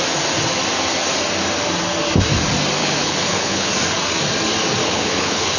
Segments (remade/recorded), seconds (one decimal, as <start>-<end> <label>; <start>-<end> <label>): 0.0-2.8 recorded; 2.8-3.7 remade; 3.7-4.8 recorded; 4.8-5.6 remade